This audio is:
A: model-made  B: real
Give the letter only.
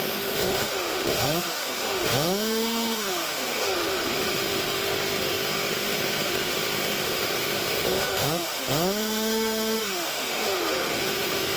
A